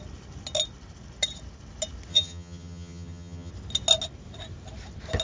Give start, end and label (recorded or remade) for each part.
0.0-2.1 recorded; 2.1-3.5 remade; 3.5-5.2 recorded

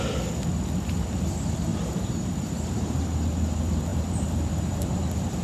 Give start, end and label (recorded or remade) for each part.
0.0-1.7 recorded; 1.7-3.0 remade; 3.0-3.9 recorded; 3.9-4.9 remade; 4.9-5.4 recorded

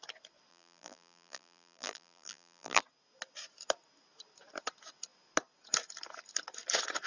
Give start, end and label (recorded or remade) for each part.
0.0-0.5 recorded; 0.5-2.8 remade; 2.8-7.1 recorded

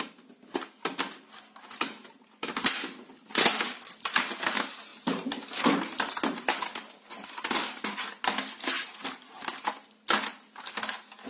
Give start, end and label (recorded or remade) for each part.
0.0-11.3 recorded

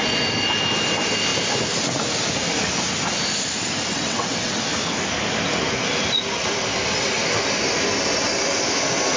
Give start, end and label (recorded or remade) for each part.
0.0-3.9 recorded; 3.9-4.6 remade; 4.6-9.2 recorded

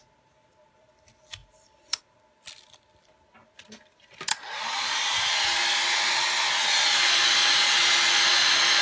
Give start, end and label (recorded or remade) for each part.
0.0-1.4 recorded; 1.4-2.0 remade; 2.0-8.8 recorded

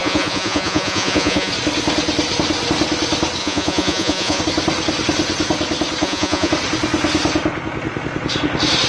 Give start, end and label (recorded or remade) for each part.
0.0-1.5 remade; 1.5-3.4 recorded; 3.4-4.4 remade; 4.4-6.0 recorded; 6.0-6.5 remade; 6.5-8.9 recorded